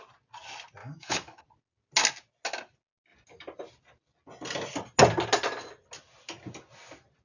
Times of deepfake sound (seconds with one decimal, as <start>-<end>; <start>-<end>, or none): 0.8-1.4